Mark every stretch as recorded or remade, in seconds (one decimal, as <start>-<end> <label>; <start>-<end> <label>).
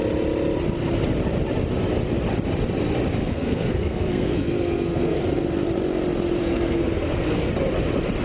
0.0-3.2 recorded; 3.2-5.2 remade; 5.2-6.4 recorded; 6.4-7.5 remade; 7.5-8.2 recorded